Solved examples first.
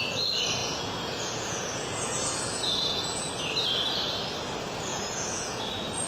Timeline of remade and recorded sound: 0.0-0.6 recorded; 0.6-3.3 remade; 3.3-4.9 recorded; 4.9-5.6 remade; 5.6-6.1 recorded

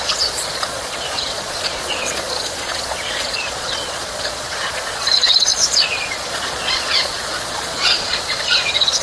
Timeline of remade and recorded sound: 0.0-9.0 remade

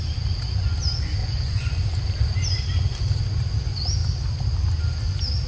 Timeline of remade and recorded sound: 0.0-1.2 recorded; 1.2-1.8 remade; 1.8-5.5 recorded